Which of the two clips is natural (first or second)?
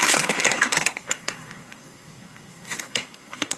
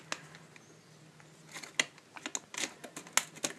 second